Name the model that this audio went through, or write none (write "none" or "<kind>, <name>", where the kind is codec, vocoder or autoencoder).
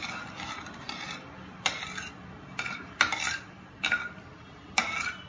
none